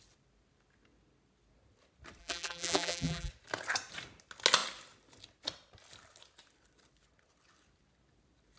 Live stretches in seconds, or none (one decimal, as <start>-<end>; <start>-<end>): 0.0-2.2; 3.3-8.6